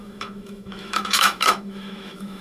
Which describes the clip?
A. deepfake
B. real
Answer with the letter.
A